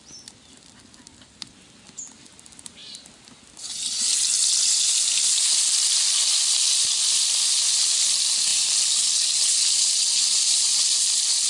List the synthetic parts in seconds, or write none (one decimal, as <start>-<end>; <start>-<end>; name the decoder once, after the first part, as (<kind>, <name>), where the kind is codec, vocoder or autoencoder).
none